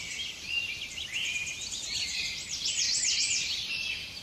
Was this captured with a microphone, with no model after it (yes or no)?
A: yes